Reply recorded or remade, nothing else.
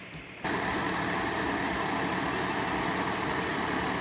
recorded